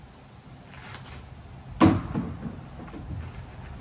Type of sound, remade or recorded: recorded